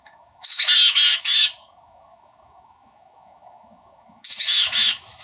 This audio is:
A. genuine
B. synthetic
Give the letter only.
B